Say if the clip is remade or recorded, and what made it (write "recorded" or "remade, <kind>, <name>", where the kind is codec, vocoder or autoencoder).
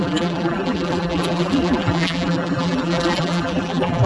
remade, vocoder, BigVGAN v2